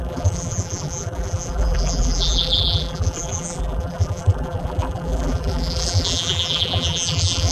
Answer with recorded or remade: remade